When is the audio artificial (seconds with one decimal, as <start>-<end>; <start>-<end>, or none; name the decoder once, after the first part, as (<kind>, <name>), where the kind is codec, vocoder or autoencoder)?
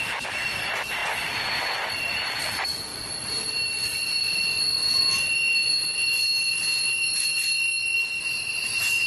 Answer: 0.0-1.0 (vocoder, BigVGAN v2); 1.6-7.7; 8.2-9.1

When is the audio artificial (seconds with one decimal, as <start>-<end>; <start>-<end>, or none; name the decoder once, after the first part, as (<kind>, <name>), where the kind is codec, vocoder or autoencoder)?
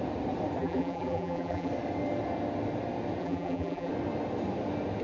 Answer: 0.6-1.7 (vocoder, BigVGAN v2); 3.2-3.9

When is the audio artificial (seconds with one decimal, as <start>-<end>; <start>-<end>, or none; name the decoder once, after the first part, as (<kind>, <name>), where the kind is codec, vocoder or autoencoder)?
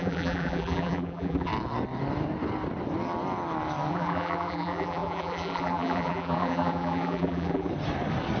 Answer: 0.0-1.5 (vocoder, BigVGAN v2); 3.9-7.7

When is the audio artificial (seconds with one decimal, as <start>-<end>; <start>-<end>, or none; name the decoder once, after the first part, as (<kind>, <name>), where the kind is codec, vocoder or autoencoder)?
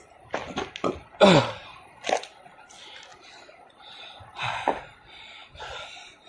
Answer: 3.1-4.5 (vocoder, BigVGAN v2); 5.4-6.3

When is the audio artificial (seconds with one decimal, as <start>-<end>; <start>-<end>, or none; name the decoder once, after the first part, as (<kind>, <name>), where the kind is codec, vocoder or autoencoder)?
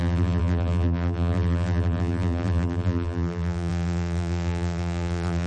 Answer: 0.0-5.5 (vocoder, BigVGAN v2)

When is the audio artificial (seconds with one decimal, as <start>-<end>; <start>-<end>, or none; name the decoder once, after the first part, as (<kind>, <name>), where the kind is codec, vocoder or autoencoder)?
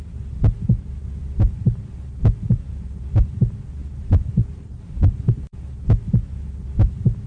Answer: 1.2-3.4 (vocoder, BigVGAN v2); 3.8-6.1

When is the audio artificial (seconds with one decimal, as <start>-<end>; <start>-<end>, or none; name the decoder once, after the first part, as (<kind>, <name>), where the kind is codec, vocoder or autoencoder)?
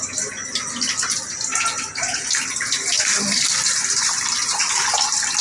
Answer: 3.1-5.0 (vocoder, BigVGAN v2)